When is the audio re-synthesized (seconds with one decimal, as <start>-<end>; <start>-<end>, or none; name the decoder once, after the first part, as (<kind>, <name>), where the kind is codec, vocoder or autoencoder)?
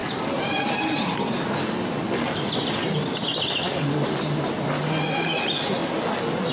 none